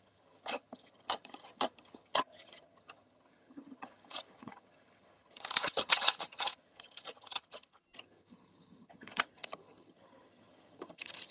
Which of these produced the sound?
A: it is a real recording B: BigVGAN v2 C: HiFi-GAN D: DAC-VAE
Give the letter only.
C